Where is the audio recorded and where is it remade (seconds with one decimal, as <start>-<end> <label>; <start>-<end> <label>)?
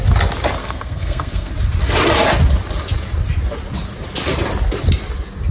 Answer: 0.0-0.6 recorded; 0.6-1.5 remade; 1.5-5.5 recorded